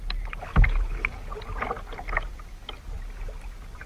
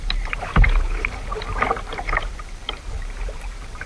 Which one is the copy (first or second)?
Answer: second